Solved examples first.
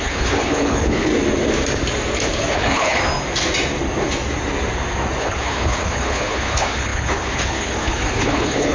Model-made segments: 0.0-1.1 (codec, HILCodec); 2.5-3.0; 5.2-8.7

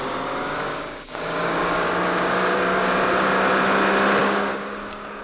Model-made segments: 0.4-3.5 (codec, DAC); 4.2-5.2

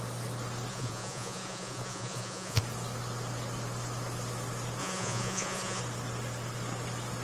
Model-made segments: 0.7-2.6 (vocoder, Vocos); 4.8-5.8

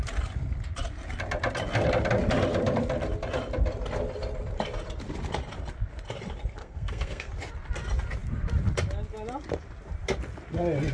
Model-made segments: 6.6-7.3 (codec, SNAC)

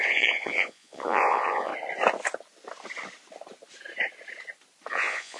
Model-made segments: 0.0-1.7 (vocoder, Vocos); 4.9-5.4

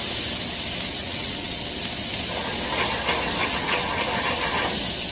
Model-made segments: 1.0-1.6 (vocoder, WaveNeXt); 3.4-4.0